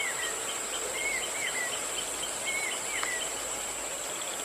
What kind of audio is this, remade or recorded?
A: recorded